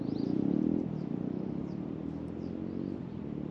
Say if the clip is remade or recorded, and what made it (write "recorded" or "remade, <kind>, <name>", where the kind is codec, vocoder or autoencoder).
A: recorded